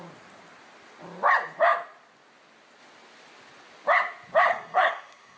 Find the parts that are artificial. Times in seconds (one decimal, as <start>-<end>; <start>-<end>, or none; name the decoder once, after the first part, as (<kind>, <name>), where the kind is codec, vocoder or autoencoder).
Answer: 4.5-5.4 (codec, SNAC)